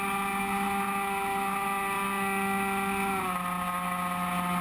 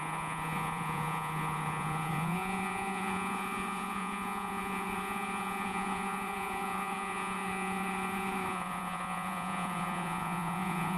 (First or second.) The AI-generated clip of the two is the second